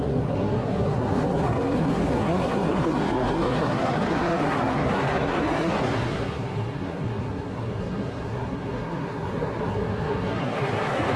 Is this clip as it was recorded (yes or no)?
no